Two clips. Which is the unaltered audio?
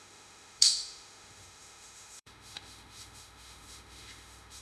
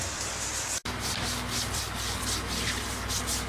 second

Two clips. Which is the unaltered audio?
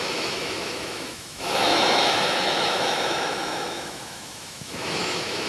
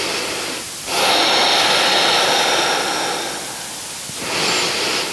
second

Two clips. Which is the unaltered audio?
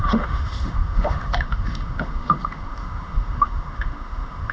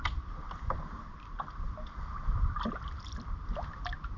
second